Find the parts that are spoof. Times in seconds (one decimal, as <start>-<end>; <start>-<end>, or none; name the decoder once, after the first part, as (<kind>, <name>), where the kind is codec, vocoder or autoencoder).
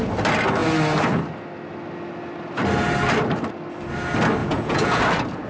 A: 4.4-5.0 (vocoder, Vocos)